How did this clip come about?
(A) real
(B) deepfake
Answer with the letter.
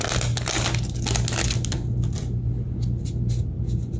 A